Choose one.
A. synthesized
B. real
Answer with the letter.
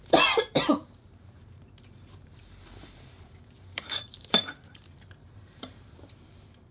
A